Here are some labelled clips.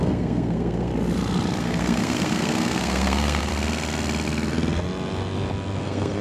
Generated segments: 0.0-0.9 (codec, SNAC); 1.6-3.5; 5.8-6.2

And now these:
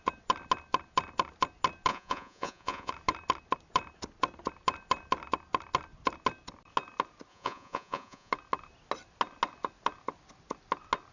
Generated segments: 1.9-2.9 (vocoder, Vocos); 7.3-8.3

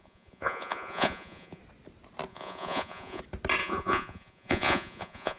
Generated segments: 0.0-1.6 (vocoder, Vocos); 2.3-3.2; 3.6-5.4